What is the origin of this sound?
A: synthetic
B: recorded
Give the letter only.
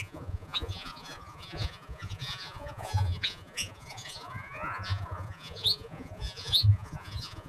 A